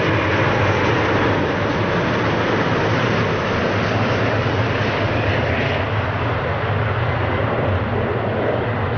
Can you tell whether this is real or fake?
real